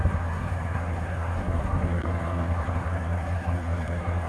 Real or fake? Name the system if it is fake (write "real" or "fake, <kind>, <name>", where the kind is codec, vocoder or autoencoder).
fake, codec, SNAC